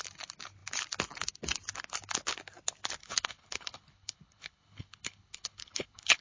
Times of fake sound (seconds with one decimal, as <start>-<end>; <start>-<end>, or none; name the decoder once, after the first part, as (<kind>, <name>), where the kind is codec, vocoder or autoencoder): 3.0-6.2 (codec, HILCodec)